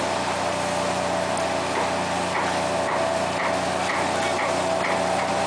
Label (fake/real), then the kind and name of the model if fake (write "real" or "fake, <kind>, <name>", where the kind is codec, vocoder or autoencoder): real